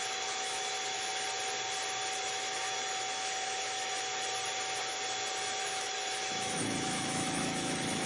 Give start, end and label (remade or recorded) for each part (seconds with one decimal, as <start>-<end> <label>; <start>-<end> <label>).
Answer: 0.0-1.1 remade; 1.1-2.2 recorded; 2.2-4.1 remade; 4.1-5.6 recorded; 5.6-8.1 remade